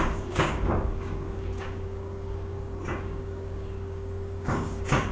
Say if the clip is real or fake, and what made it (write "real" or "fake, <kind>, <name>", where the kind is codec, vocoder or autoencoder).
fake, codec, DAC